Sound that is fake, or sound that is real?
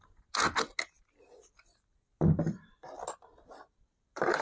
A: real